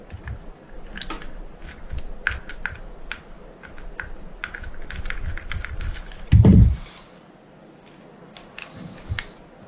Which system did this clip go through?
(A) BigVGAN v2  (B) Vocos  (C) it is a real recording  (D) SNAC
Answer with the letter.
C